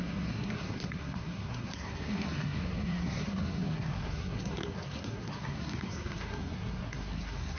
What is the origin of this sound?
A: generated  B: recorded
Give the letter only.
A